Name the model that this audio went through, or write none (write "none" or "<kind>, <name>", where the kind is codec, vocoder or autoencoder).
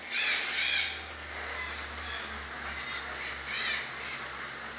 none